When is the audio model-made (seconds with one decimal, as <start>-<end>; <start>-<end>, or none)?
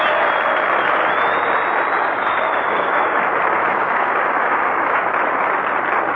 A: 2.0-3.2; 3.7-5.0